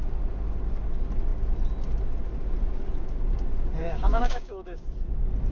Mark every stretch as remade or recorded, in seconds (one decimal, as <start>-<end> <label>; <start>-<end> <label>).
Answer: 0.0-3.8 recorded; 3.8-4.8 remade; 4.8-5.5 recorded